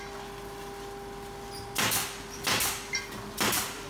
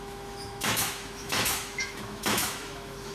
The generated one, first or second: second